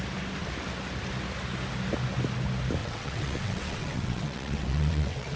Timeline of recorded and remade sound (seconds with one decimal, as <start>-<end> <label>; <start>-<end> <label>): 0.0-2.8 recorded; 2.8-5.4 remade

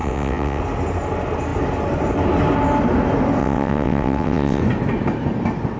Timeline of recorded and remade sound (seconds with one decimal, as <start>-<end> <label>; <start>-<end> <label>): 0.0-0.6 remade; 0.6-3.4 recorded; 3.4-4.6 remade; 4.6-5.8 recorded

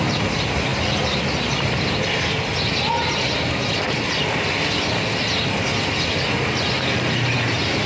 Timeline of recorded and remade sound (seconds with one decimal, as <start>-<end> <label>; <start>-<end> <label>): 0.0-7.9 recorded

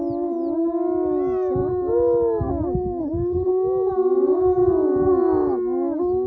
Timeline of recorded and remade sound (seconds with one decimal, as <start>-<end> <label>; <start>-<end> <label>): 0.0-3.0 recorded; 3.0-3.5 remade; 3.5-6.3 recorded

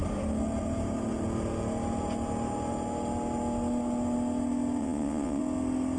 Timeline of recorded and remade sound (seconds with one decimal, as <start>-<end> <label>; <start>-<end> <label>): 0.0-4.8 recorded; 4.8-5.4 remade; 5.4-6.0 recorded

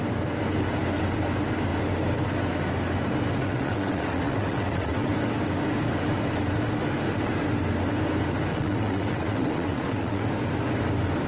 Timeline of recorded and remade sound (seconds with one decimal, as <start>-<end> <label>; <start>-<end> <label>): 0.0-3.4 recorded; 3.4-5.1 remade; 5.1-8.5 recorded; 8.5-10.2 remade; 10.2-11.3 recorded